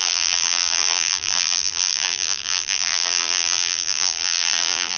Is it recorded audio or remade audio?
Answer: remade